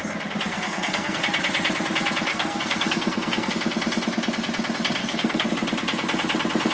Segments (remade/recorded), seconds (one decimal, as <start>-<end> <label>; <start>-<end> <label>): 0.0-0.5 recorded; 0.5-1.2 remade; 1.2-2.3 recorded; 2.3-3.5 remade; 3.5-5.0 recorded; 5.0-5.5 remade; 5.5-6.7 recorded